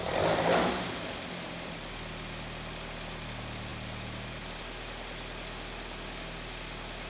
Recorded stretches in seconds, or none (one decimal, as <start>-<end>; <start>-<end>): 0.0-7.1